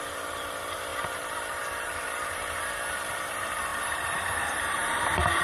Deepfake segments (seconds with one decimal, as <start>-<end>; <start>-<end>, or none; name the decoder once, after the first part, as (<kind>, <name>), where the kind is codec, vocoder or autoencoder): 0.0-5.4 (vocoder, BigVGAN v2)